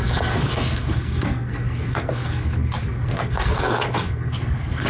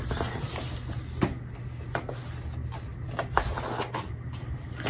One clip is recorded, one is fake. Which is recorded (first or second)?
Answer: second